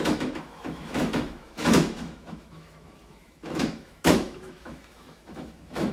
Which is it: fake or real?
fake